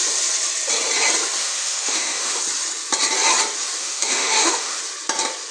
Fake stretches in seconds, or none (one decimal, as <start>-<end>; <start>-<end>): 1.4-2.4; 3.8-4.8